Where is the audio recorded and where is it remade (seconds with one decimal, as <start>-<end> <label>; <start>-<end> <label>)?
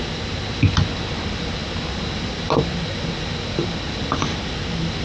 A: 0.0-5.0 recorded